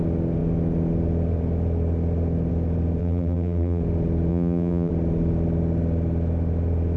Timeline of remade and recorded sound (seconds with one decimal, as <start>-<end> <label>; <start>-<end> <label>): 0.0-3.0 recorded; 3.0-3.8 remade; 3.8-4.3 recorded; 4.3-4.9 remade; 4.9-7.0 recorded